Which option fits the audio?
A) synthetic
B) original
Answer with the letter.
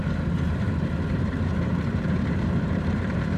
A